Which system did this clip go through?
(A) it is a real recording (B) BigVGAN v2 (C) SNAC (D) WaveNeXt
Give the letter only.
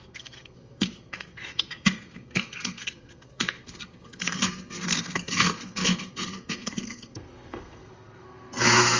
C